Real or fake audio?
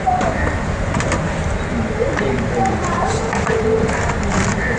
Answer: real